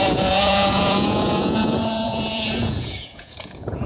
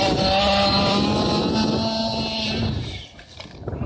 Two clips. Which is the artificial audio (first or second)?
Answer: first